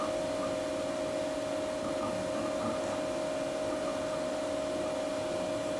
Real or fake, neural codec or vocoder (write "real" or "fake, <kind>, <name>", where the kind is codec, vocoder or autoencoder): real